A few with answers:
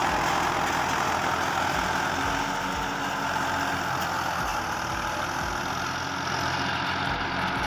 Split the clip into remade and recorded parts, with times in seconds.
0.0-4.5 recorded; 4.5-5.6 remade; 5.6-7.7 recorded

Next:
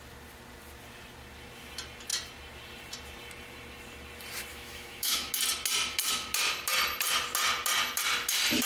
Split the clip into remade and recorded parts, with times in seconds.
0.0-4.5 recorded; 4.5-5.3 remade; 5.3-8.7 recorded